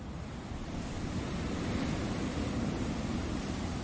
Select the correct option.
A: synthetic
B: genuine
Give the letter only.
B